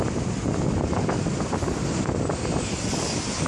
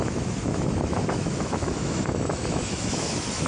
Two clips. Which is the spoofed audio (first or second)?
second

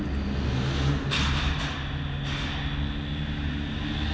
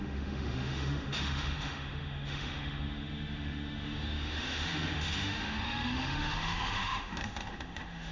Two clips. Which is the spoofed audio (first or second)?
second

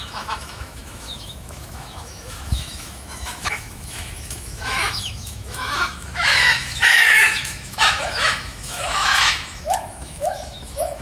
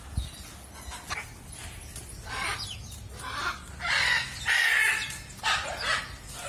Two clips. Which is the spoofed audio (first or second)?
first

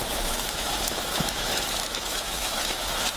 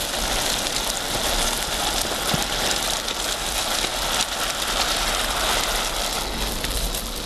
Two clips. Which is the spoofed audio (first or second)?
first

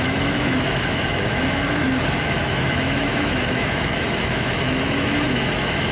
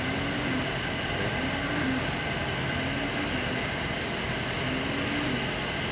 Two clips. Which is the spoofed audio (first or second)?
first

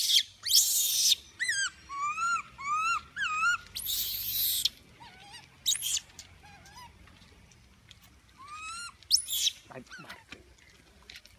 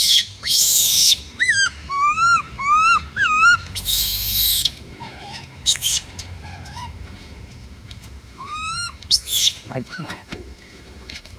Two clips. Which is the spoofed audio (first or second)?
second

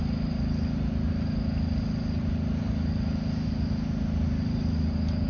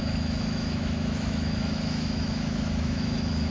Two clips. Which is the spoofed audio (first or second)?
second